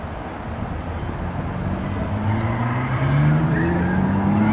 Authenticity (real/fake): real